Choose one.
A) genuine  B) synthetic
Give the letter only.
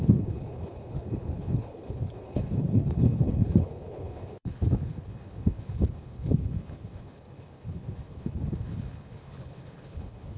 B